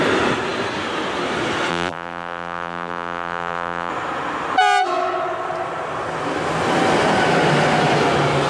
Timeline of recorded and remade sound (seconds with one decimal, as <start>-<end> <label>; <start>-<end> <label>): 0.0-1.7 recorded; 1.7-3.9 remade; 3.9-8.5 recorded